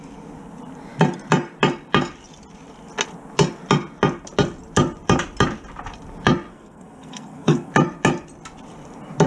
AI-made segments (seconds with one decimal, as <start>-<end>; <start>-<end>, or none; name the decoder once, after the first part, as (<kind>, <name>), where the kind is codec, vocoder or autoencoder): 6.5-7.7 (codec, SNAC)